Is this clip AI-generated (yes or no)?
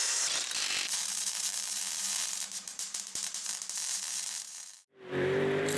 yes